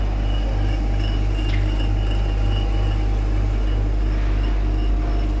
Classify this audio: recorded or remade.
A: recorded